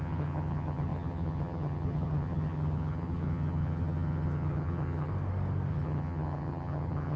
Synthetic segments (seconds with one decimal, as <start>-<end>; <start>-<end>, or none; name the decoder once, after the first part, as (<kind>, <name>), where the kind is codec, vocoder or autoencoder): 0.0-5.1 (vocoder, HiFi-GAN); 5.7-7.2